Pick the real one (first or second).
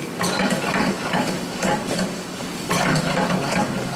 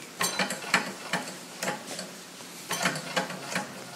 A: second